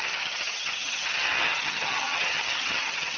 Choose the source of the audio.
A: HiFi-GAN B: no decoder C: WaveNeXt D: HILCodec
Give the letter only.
A